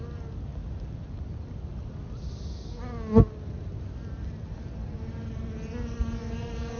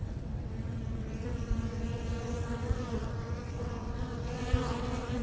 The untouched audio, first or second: first